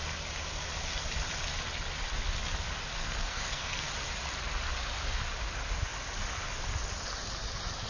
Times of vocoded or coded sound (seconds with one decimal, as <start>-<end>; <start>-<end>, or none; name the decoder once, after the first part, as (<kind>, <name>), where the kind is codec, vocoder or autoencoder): 2.9-3.9 (codec, SNAC)